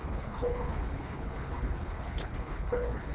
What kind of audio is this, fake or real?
fake